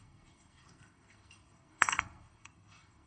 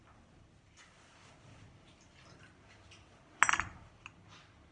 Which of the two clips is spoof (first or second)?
first